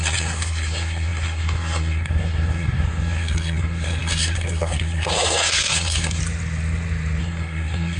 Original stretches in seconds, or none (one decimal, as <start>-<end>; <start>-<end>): 6.2-7.2